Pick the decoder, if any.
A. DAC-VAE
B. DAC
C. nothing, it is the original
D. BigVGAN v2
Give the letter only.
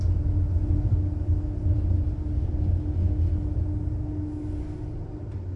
C